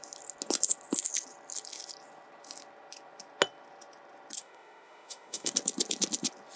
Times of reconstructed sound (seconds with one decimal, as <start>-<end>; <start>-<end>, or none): 4.4-5.5